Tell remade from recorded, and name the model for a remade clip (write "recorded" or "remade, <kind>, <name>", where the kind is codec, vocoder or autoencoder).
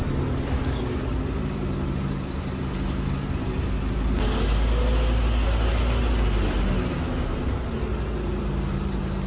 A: recorded